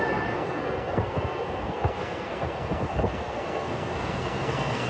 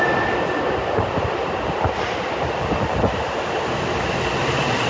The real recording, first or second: second